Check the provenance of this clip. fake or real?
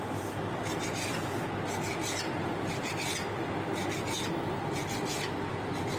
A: real